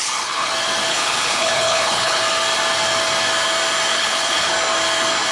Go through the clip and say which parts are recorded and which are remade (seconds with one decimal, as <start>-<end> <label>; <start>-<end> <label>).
0.0-0.5 remade; 0.5-0.9 recorded; 0.9-2.2 remade; 2.2-3.9 recorded; 3.9-4.5 remade; 4.5-5.3 recorded